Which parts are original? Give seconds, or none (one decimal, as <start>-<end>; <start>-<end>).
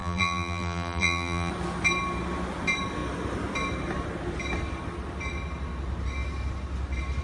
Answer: 1.5-7.2